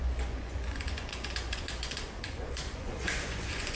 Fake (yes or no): yes